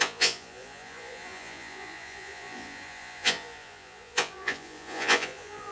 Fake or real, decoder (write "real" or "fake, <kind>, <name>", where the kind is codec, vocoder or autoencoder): fake, vocoder, Vocos